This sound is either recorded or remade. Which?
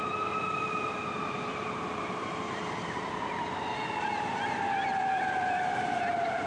remade